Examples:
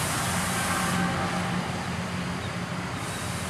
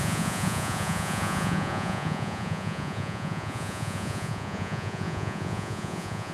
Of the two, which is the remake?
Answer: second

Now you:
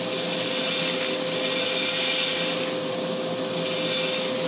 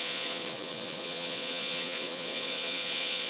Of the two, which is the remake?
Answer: second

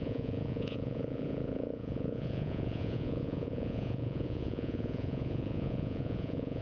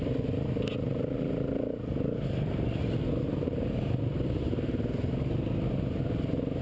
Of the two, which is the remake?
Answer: first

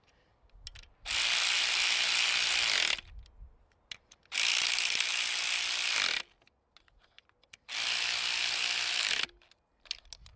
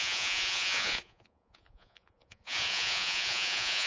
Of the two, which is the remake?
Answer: second